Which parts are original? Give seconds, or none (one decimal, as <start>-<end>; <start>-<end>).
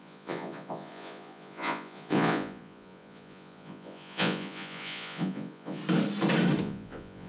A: 5.8-6.6